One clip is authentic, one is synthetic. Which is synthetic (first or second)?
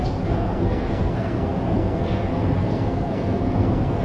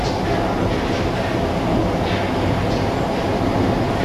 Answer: first